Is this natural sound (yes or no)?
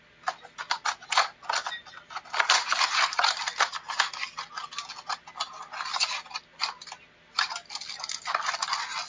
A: yes